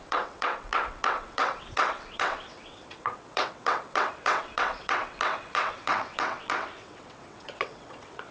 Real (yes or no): no